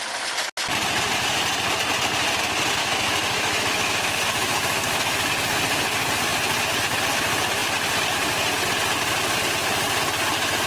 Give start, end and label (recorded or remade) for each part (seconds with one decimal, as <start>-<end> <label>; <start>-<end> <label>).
0.0-2.8 recorded; 2.8-5.3 remade; 5.3-10.7 recorded